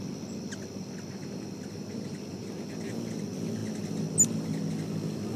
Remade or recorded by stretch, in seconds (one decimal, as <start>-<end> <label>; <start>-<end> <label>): 0.0-5.4 recorded